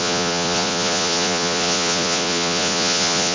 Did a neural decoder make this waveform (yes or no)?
yes